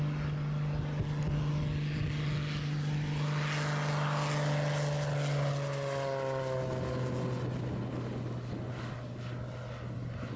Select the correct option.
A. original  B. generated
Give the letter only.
A